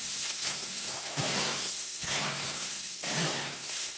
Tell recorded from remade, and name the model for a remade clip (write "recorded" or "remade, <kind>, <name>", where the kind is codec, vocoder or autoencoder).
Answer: remade, codec, SNAC